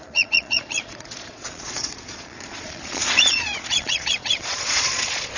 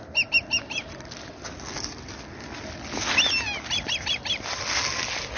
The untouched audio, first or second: second